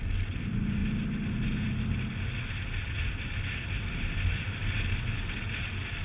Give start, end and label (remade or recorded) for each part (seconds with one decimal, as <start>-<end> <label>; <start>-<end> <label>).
0.0-6.0 recorded